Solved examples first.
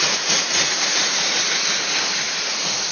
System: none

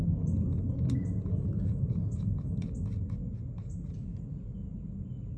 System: none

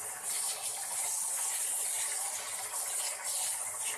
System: none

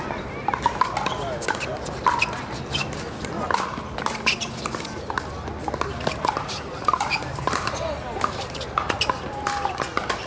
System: none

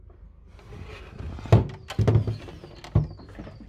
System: none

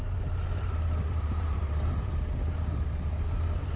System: vocoder, BigVGAN v2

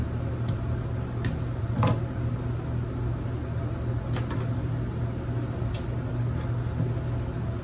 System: none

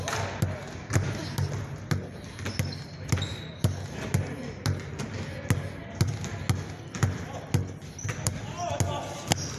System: none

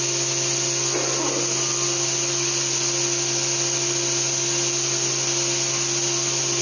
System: none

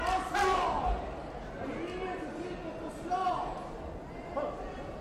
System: none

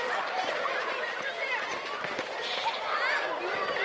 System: none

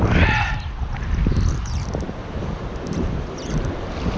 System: none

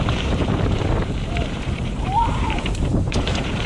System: vocoder, BigVGAN v2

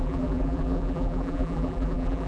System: vocoder, BigVGAN v2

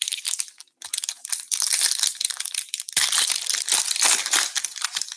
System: vocoder, BigVGAN v2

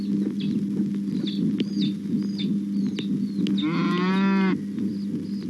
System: none